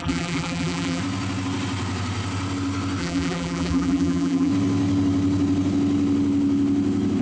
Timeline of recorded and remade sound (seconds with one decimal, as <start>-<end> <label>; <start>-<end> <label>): 0.0-1.0 remade; 1.0-3.0 recorded; 3.0-4.5 remade; 4.5-7.2 recorded